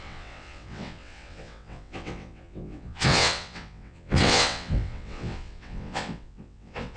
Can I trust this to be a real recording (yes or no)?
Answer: no